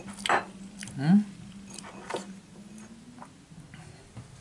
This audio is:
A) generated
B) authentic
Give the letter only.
B